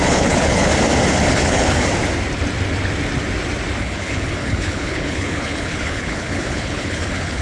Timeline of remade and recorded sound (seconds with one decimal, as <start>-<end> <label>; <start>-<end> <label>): 0.0-0.7 remade; 0.7-1.3 recorded; 1.3-1.9 remade; 1.9-3.8 recorded; 3.8-7.4 remade